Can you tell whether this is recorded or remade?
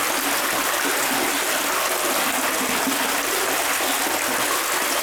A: recorded